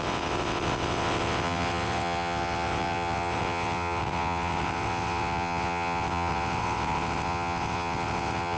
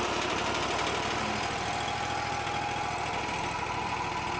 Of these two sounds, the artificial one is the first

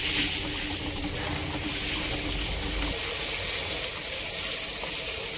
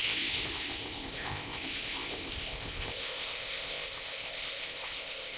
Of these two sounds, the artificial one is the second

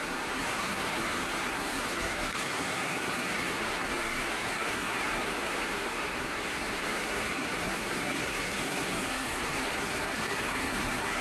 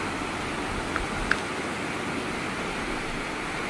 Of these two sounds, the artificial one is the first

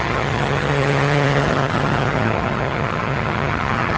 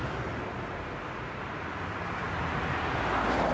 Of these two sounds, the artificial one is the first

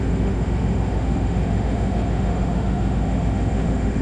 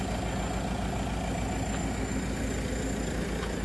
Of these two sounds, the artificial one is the first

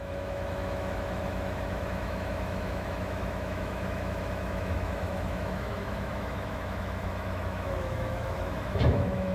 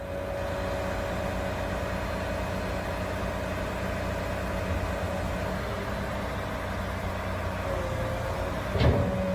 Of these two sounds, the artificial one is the first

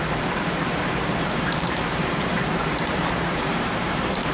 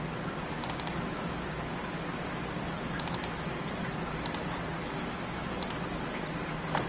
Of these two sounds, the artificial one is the first